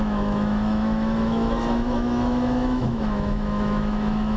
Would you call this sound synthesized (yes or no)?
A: yes